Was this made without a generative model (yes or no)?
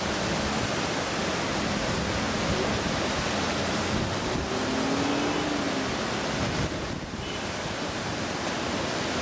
yes